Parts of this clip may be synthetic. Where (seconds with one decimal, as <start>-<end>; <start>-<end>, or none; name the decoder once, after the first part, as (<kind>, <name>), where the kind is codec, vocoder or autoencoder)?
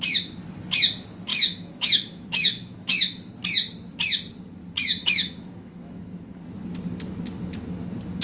1.3-3.3 (autoencoder, DAC-VAE); 5.0-6.4